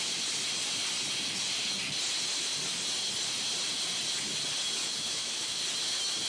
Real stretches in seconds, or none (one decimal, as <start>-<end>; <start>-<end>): 0.0-4.8; 5.6-6.3